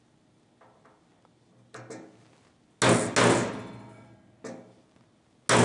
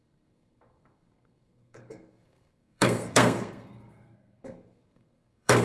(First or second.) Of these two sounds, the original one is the first